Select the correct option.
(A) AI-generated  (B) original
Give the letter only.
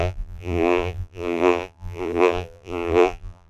A